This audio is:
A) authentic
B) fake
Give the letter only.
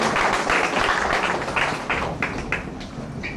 A